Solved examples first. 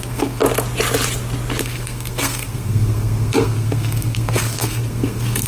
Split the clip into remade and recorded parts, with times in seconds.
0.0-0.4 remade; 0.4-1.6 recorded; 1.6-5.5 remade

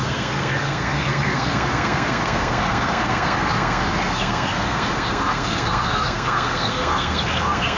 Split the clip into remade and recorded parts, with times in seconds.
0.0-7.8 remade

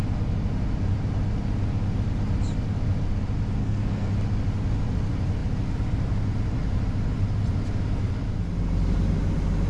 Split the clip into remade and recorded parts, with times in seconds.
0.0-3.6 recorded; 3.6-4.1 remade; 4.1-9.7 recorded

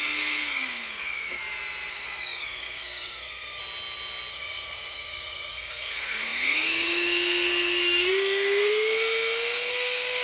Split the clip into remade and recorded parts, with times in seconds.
0.0-1.4 remade; 1.4-1.9 recorded; 1.9-3.6 remade; 3.6-4.3 recorded; 4.3-10.2 remade

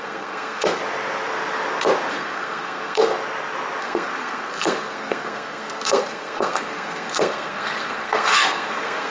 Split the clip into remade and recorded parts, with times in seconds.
0.0-0.8 remade; 0.8-2.1 recorded; 2.1-3.1 remade; 3.1-3.8 recorded; 3.8-9.1 remade

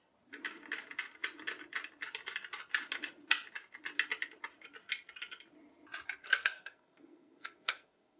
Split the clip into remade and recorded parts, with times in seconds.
0.0-6.2 recorded; 6.2-8.2 remade

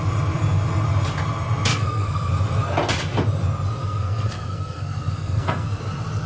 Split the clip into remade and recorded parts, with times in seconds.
0.0-1.7 recorded; 1.7-2.3 remade; 2.3-3.8 recorded; 3.8-5.8 remade; 5.8-6.3 recorded